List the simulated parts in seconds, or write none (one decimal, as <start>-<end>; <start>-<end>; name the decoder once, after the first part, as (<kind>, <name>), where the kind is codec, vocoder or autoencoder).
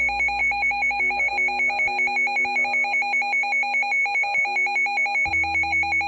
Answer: 0.4-1.3 (autoencoder, DAC-VAE)